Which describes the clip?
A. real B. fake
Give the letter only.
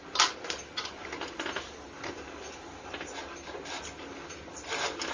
A